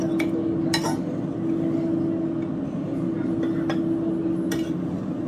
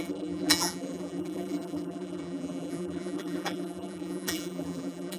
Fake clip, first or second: second